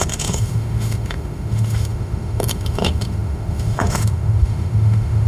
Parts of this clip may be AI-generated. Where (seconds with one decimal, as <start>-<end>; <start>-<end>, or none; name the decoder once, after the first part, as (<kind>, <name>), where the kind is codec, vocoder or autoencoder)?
0.0-5.3 (autoencoder, DAC-VAE)

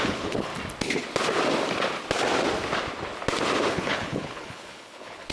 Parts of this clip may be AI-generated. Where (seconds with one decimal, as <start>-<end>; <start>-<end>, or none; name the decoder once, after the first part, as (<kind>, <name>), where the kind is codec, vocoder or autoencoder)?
0.0-0.5 (codec, HILCodec); 3.7-5.3